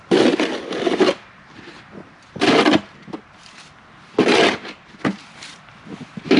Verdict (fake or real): real